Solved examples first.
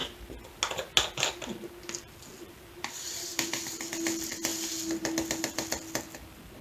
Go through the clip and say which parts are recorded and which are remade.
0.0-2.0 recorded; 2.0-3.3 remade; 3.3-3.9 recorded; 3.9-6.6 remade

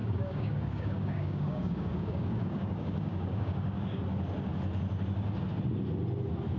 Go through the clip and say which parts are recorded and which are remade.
0.0-4.0 remade; 4.0-6.6 recorded

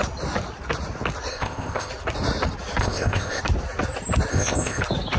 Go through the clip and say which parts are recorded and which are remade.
0.0-1.3 recorded; 1.3-1.9 remade; 1.9-2.8 recorded; 2.8-3.4 remade; 3.4-4.3 recorded; 4.3-4.8 remade; 4.8-5.2 recorded

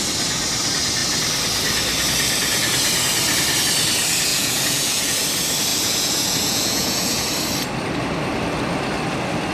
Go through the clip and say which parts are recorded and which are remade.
0.0-4.3 recorded; 4.3-5.2 remade; 5.2-5.7 recorded; 5.7-7.3 remade; 7.3-9.5 recorded